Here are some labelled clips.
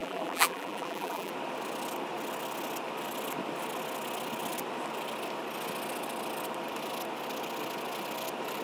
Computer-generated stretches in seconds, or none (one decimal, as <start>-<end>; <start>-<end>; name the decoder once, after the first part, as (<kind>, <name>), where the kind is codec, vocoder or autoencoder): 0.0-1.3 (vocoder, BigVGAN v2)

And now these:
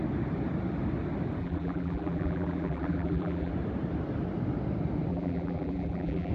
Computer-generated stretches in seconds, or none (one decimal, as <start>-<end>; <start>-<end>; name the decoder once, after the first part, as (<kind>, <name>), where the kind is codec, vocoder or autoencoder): 1.4-3.5 (vocoder, BigVGAN v2); 5.1-6.3

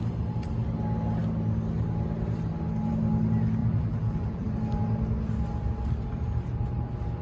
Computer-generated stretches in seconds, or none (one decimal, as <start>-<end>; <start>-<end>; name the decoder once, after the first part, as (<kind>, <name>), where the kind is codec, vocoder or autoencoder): 3.6-4.5 (vocoder, BigVGAN v2)

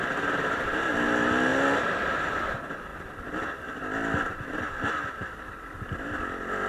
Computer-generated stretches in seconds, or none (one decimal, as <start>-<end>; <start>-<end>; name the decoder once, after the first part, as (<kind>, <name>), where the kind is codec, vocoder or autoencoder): none